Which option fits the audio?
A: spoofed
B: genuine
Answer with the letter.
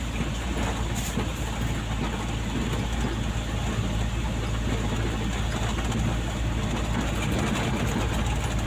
B